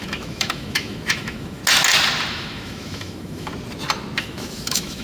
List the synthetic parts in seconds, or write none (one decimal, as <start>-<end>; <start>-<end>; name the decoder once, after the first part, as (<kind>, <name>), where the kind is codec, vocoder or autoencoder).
0.0-1.6 (autoencoder, DAC-VAE); 2.3-3.5; 4.2-5.0